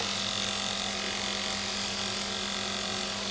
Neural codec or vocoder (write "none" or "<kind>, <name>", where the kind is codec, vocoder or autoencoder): none